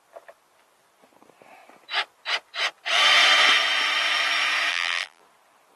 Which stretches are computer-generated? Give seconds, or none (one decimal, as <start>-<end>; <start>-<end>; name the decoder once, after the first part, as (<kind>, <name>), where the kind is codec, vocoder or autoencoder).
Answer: 4.7-5.2 (vocoder, BigVGAN v2)